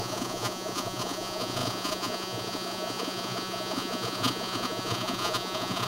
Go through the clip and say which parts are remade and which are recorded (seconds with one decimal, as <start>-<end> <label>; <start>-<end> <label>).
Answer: 0.0-5.9 remade